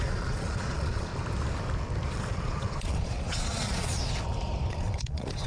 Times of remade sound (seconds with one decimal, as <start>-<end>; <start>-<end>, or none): 0.0-1.1; 2.1-4.0; 4.7-5.5